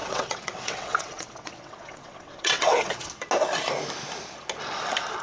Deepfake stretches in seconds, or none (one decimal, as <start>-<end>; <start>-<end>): 0.0-3.1